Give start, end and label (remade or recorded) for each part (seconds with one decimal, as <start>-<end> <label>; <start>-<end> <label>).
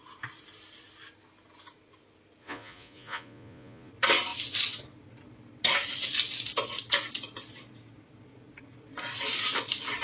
0.0-2.4 recorded; 2.4-3.9 remade; 3.9-10.0 recorded